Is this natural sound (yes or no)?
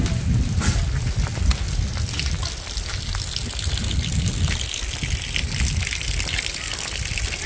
yes